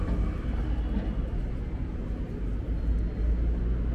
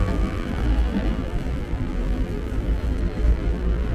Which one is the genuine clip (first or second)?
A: first